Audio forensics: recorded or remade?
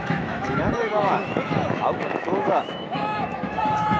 remade